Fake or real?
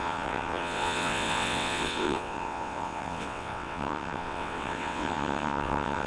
fake